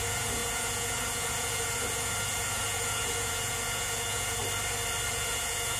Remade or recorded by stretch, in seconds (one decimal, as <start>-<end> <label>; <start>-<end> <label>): 0.0-4.4 remade; 4.4-5.1 recorded; 5.1-5.8 remade